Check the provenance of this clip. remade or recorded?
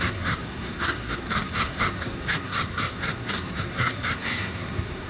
remade